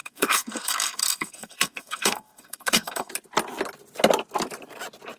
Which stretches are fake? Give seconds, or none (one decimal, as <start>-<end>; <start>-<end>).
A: 0.0-3.1